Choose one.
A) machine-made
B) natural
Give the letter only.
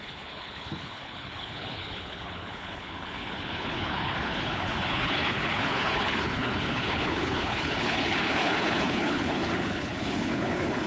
A